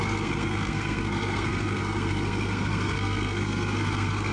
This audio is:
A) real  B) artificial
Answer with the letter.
B